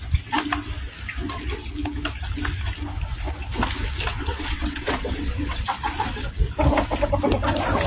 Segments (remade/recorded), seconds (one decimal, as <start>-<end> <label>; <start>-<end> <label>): 0.0-4.1 recorded; 4.1-5.8 remade; 5.8-7.9 recorded